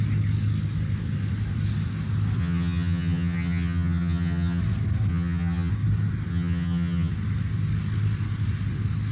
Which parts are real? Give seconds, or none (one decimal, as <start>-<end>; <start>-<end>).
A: 0.0-2.4; 4.6-5.1; 5.7-6.3; 7.1-9.1